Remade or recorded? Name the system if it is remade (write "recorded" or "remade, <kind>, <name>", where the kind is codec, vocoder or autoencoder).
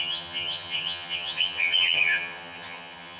remade, vocoder, HiFi-GAN